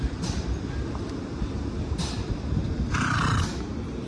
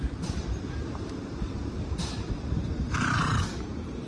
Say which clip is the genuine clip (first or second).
first